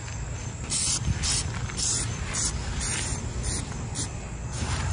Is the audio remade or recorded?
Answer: recorded